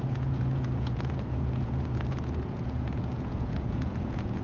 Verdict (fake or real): fake